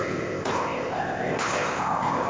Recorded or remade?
remade